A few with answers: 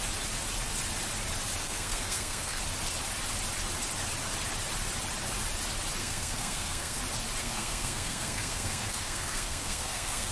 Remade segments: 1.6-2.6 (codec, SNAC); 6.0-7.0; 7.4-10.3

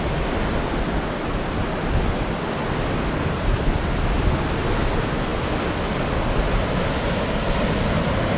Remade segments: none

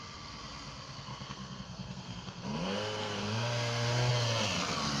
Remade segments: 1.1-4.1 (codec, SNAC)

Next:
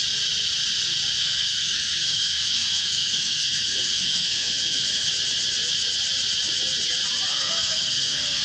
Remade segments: 1.2-5.1 (codec, SNAC); 7.3-8.4

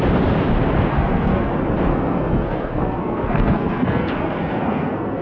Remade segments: 0.9-1.5 (codec, SNAC); 1.9-5.2

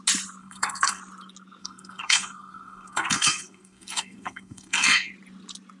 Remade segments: 0.4-1.0 (codec, SNAC); 1.6-5.1

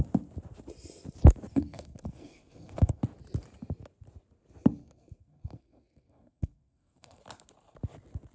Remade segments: 1.5-3.0 (codec, SNAC); 4.8-7.2

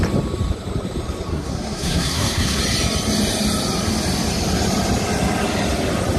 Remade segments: 1.3-2.6 (codec, SNAC)